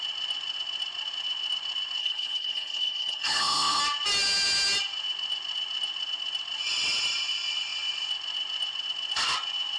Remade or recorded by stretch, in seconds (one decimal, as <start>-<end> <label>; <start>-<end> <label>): 0.0-2.0 recorded; 2.0-3.8 remade; 3.8-9.8 recorded